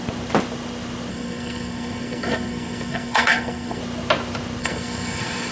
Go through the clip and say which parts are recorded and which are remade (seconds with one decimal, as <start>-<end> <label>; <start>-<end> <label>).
0.0-1.1 recorded; 1.1-3.8 remade; 3.8-4.6 recorded; 4.6-5.5 remade